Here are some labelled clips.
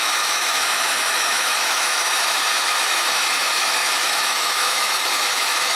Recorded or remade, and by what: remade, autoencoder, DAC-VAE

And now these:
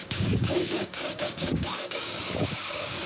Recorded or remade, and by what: remade, codec, DAC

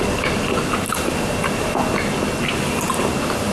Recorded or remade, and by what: recorded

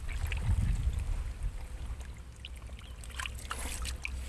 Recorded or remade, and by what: recorded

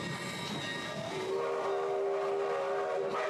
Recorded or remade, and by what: recorded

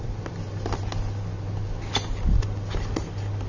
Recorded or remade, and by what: recorded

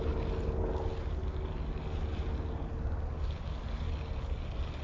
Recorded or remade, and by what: recorded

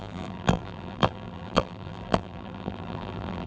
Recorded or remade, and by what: remade, vocoder, BigVGAN v2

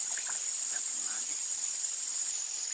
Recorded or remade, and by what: recorded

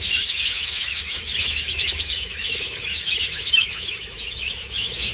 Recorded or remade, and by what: remade, autoencoder, DAC-VAE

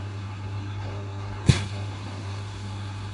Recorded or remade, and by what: remade, codec, SNAC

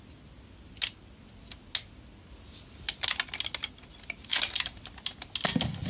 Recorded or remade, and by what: recorded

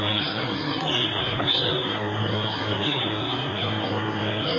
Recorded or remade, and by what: remade, codec, SNAC